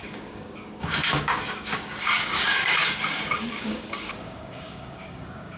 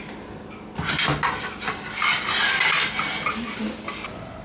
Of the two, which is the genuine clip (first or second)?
second